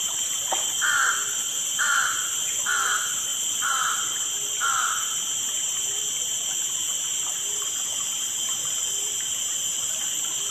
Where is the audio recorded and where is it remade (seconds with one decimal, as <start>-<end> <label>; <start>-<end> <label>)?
0.0-1.5 recorded; 1.5-2.4 remade; 2.4-6.9 recorded; 6.9-10.1 remade; 10.1-10.5 recorded